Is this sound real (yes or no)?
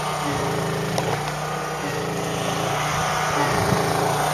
yes